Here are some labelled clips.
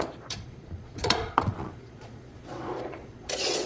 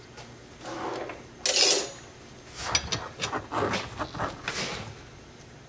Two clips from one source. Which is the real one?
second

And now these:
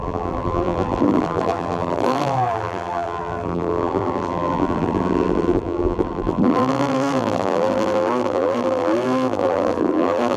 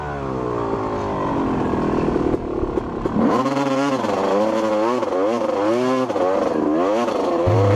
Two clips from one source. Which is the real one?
second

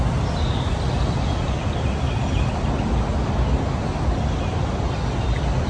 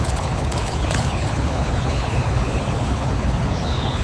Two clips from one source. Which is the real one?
first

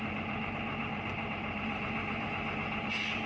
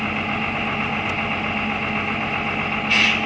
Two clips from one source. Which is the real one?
second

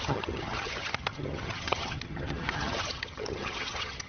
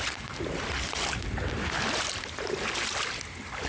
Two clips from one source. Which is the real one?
second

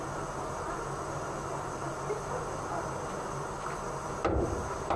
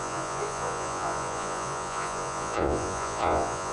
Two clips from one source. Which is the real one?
first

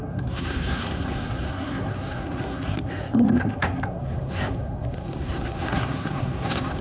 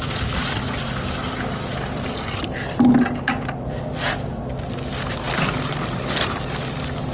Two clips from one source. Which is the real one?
second